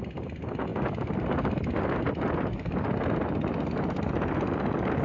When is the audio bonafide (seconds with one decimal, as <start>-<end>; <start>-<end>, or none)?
0.0-5.0